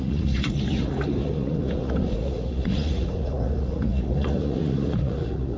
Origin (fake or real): fake